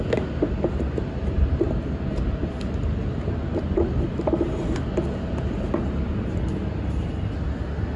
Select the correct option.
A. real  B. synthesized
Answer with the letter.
A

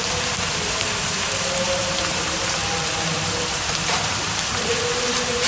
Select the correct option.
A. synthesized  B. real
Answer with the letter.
A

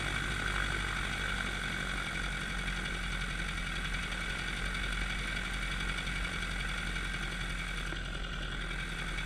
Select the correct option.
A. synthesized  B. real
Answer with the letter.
B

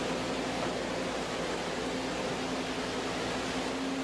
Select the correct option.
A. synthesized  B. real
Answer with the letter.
B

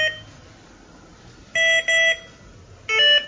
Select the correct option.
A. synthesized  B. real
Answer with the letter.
B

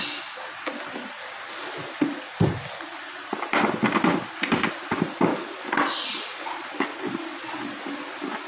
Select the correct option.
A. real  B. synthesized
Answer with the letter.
A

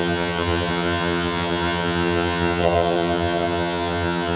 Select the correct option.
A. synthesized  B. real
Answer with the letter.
A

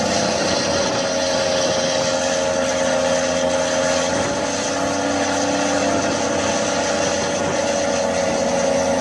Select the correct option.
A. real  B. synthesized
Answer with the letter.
A